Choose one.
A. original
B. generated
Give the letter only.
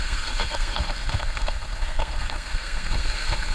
B